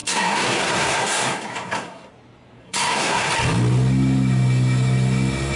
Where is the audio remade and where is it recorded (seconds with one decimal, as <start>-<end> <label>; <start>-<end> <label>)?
0.0-2.1 remade; 2.1-2.6 recorded; 2.6-3.3 remade; 3.3-5.6 recorded